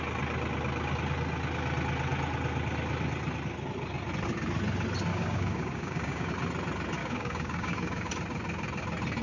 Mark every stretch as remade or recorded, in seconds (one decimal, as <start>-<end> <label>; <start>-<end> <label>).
0.0-5.1 recorded; 5.1-6.3 remade; 6.3-7.0 recorded; 7.0-8.1 remade; 8.1-9.2 recorded